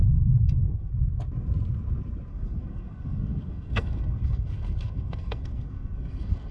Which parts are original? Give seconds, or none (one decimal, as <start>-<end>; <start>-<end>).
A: 0.9-2.3